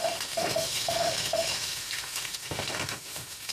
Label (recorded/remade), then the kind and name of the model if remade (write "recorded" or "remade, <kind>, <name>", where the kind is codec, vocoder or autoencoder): remade, autoencoder, DAC-VAE